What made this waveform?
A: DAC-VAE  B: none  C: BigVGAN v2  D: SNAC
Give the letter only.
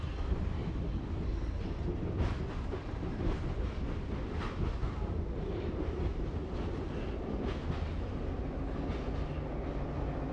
B